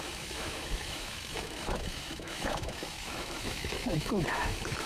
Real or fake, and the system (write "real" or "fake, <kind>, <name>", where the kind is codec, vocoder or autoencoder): fake, autoencoder, DAC-VAE